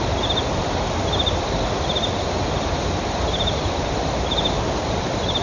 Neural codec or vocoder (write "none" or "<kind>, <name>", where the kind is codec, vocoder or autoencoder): none